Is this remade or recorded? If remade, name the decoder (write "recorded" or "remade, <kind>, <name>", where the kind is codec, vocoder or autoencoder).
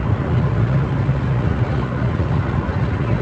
remade, vocoder, Vocos